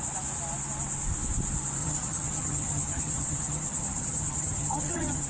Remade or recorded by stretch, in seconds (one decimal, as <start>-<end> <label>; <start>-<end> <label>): 0.0-1.8 recorded; 1.8-5.3 remade